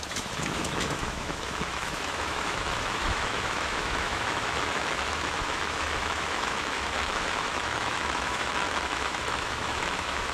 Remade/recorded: remade